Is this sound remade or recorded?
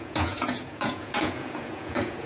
remade